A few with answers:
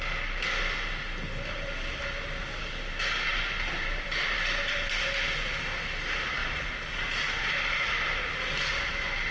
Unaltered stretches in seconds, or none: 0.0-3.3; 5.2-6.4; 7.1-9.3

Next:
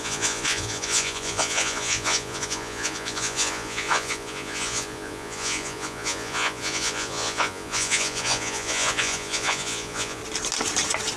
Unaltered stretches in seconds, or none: 10.2-11.2

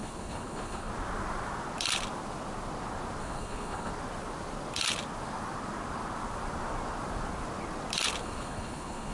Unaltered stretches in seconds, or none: 0.9-3.2; 3.9-8.2

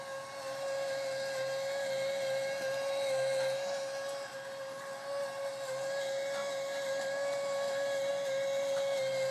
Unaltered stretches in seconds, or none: 0.0-9.3

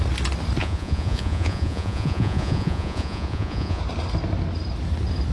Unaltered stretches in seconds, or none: 0.0-0.6; 3.8-5.3

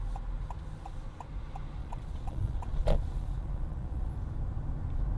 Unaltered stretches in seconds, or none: 0.0-1.8; 4.1-5.2

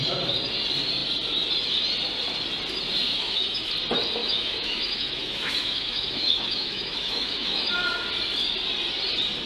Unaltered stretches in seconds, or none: 0.0-3.1; 3.7-4.2; 7.7-9.5

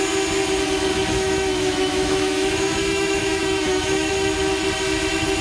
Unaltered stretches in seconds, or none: 0.0-0.9; 4.1-5.4